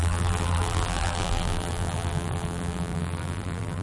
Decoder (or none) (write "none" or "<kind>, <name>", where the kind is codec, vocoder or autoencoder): vocoder, BigVGAN v2